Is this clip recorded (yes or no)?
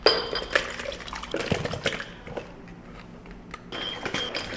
yes